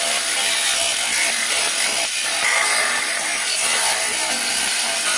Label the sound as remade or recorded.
recorded